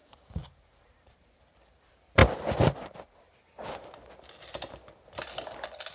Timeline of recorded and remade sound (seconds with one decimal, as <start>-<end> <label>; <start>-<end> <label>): 0.0-2.2 remade; 2.2-5.9 recorded